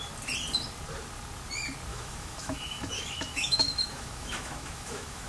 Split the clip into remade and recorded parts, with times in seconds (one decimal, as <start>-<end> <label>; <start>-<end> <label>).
0.0-1.9 recorded; 1.9-5.3 remade